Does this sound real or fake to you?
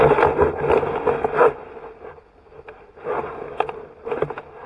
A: real